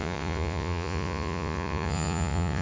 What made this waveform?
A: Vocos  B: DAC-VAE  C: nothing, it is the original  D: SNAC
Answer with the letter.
A